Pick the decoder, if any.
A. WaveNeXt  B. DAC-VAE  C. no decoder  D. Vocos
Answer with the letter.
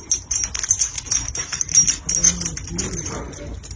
C